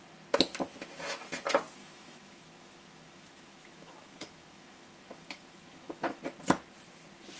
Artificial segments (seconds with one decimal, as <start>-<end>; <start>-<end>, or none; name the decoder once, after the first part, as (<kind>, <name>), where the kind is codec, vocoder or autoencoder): 1.8-6.2 (autoencoder, DAC-VAE)